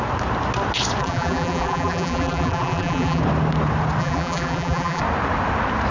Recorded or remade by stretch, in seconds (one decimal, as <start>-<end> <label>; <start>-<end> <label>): 0.0-1.0 recorded; 1.0-3.2 remade; 3.2-4.0 recorded; 4.0-5.0 remade; 5.0-5.9 recorded